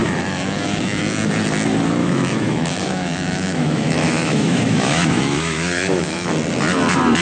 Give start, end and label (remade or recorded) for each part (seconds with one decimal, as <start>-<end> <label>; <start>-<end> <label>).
0.0-1.0 remade; 1.0-2.0 recorded; 2.0-6.3 remade; 6.3-7.2 recorded